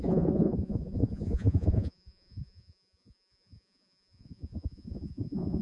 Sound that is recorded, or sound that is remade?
remade